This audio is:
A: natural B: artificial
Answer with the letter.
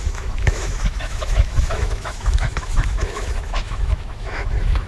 B